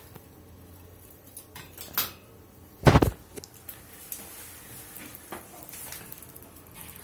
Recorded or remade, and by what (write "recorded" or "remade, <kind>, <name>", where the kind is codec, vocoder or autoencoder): recorded